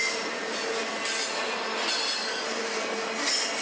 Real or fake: real